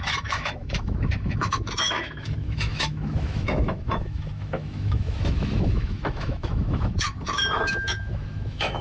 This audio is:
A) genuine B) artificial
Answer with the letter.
B